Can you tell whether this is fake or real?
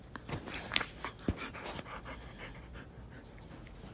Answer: real